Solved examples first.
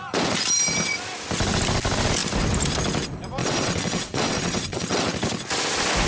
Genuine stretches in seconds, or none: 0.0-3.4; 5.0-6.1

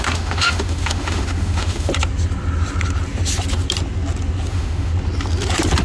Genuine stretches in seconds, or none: 1.9-4.5; 4.9-5.8